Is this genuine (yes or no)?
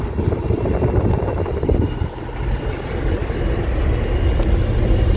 yes